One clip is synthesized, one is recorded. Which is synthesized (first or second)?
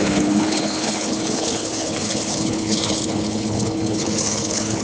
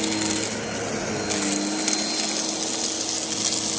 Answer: first